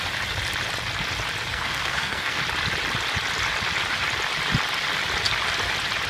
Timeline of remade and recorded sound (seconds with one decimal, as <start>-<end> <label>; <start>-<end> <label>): 0.0-1.5 recorded; 1.5-2.4 remade; 2.4-6.1 recorded